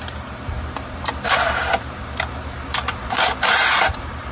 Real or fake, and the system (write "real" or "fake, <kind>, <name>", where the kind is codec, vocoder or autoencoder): fake, vocoder, BigVGAN v2